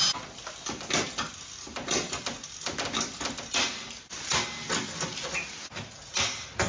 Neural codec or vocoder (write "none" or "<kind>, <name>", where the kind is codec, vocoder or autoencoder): none